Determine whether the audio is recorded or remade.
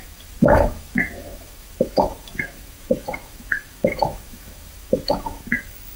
remade